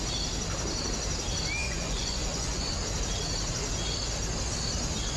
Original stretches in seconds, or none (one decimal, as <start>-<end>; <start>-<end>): 0.0-1.6; 2.7-5.2